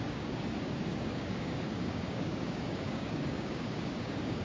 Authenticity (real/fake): fake